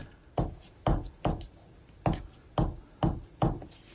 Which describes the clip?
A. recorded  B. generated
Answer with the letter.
A